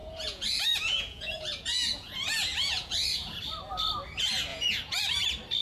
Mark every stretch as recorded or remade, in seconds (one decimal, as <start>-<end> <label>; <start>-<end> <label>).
0.0-3.4 remade; 3.4-4.5 recorded; 4.5-5.0 remade; 5.0-5.6 recorded